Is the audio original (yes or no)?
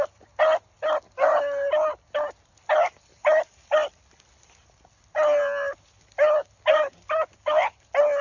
yes